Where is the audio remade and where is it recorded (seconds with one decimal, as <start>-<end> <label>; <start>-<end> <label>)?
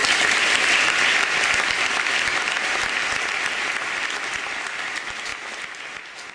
0.0-6.3 recorded